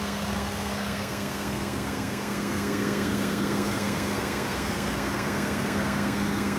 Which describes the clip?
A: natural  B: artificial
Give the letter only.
B